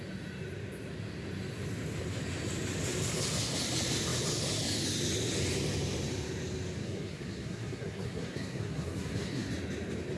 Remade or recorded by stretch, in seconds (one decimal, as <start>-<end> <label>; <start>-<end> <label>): 0.0-6.8 recorded; 6.8-9.5 remade; 9.5-10.2 recorded